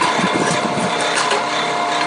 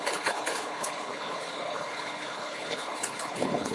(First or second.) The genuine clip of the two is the first